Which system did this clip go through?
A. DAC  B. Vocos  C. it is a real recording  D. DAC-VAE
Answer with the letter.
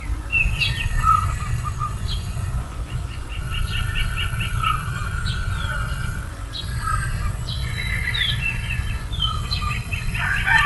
B